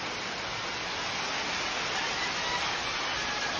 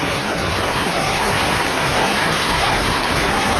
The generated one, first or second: second